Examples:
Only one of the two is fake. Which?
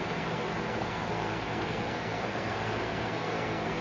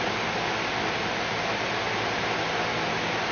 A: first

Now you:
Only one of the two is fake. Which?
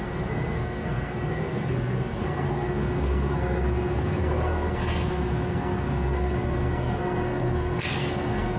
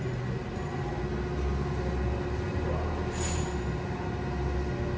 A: first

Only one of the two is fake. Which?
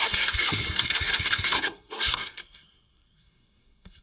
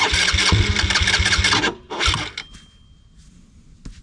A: first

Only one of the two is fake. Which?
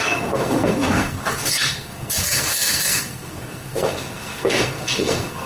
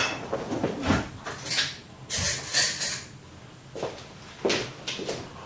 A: first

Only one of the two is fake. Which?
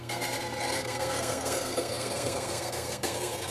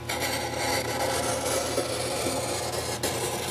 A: first